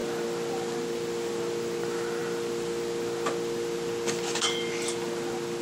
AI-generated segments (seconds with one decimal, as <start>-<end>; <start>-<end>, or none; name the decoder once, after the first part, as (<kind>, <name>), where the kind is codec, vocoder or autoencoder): none